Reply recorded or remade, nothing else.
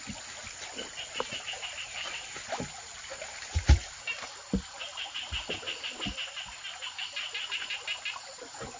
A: recorded